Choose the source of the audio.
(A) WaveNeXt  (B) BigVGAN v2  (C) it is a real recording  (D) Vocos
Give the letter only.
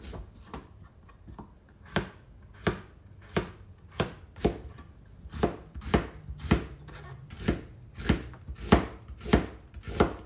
C